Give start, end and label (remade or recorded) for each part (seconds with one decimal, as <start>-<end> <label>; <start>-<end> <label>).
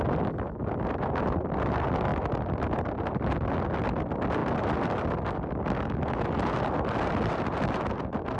0.0-8.4 recorded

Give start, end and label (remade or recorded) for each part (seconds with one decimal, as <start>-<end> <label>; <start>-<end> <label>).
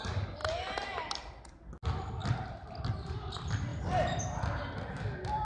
0.0-2.2 recorded; 2.2-2.8 remade; 2.8-3.7 recorded; 3.7-4.2 remade; 4.2-5.4 recorded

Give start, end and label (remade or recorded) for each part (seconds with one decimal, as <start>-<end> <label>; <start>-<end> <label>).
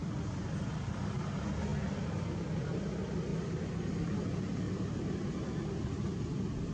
0.0-1.2 remade; 1.2-6.7 recorded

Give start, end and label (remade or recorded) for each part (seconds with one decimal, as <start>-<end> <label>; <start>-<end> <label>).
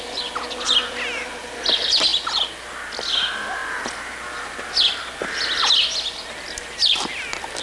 0.0-7.6 recorded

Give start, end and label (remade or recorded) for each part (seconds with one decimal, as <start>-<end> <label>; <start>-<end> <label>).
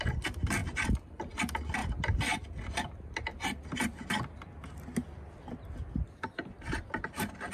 0.0-0.6 recorded; 0.6-1.2 remade; 1.2-7.5 recorded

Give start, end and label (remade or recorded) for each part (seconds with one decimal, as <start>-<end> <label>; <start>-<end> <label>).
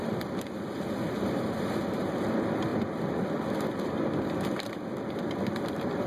0.0-6.1 remade